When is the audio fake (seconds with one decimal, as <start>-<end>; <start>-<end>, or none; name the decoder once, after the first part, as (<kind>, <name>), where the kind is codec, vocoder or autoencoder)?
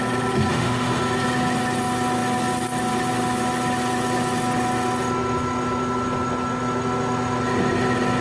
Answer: 0.5-1.0 (autoencoder, DAC-VAE)